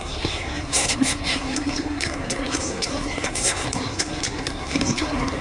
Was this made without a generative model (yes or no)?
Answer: no